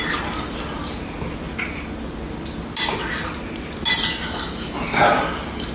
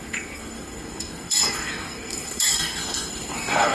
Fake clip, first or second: second